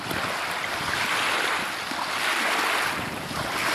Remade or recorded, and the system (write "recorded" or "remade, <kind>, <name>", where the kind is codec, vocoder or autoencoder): recorded